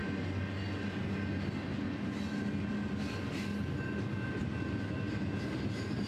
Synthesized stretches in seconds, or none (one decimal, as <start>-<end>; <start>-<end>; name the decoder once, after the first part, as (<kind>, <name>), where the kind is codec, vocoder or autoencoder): none